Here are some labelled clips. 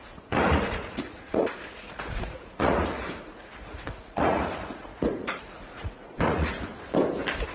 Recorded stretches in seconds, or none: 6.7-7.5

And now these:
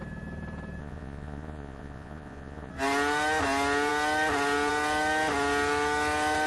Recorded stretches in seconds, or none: 0.0-0.8; 2.7-6.5

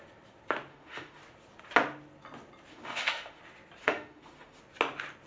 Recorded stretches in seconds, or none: 0.0-0.7; 1.2-2.7; 3.4-3.8; 4.6-5.3

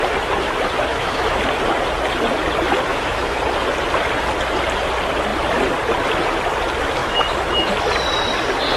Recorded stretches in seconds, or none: 0.0-0.9; 1.4-2.9; 3.4-7.0; 7.7-8.8

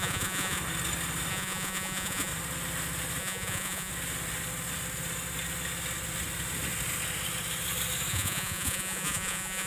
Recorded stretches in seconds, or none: 0.6-1.3; 2.3-3.2; 3.9-8.1

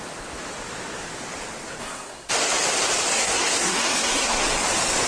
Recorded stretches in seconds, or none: 0.0-1.8; 2.3-3.1; 4.4-5.1

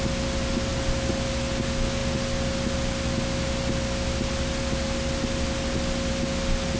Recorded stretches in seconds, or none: 0.0-6.8

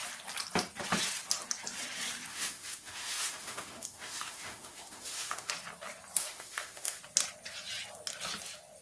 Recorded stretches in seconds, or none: 0.0-2.3; 5.5-6.2; 7.0-8.8